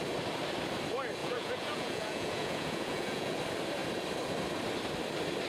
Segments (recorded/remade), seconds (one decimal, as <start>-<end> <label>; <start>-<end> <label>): 0.0-1.2 recorded; 1.2-3.4 remade; 3.4-5.5 recorded